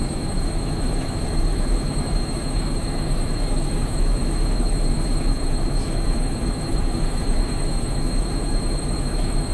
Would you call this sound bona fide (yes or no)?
no